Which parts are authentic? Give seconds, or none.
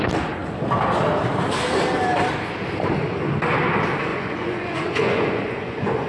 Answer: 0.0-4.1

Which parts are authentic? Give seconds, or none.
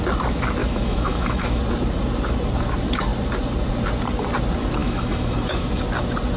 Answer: 0.0-0.6; 1.6-4.8; 5.8-6.4